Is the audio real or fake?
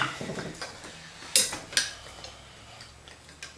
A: real